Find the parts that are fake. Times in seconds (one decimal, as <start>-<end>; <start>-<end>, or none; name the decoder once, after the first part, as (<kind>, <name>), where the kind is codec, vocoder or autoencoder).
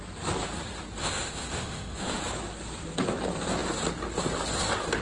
1.0-2.2 (autoencoder, DAC-VAE)